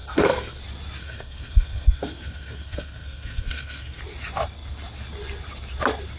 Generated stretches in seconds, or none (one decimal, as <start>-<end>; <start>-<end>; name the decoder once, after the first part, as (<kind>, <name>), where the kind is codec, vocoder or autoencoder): 0.0-0.6 (codec, SNAC); 1.0-4.0